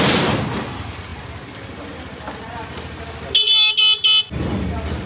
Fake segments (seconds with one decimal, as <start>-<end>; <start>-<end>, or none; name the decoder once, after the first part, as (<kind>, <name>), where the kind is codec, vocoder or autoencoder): none